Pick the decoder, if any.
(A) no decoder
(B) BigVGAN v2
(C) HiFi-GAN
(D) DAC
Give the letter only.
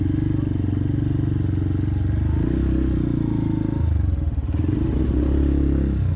A